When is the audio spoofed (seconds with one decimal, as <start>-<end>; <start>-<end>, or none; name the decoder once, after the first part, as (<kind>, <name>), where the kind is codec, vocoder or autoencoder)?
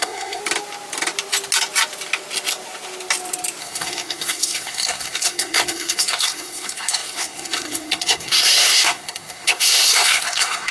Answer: 0.0-0.4 (codec, SNAC); 3.6-10.7